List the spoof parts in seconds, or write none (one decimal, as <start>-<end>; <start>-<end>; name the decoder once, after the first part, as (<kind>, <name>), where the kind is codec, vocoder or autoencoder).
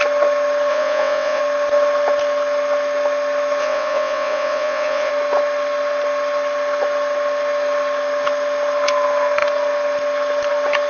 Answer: 0.7-1.4 (vocoder, WaveNeXt); 3.6-5.1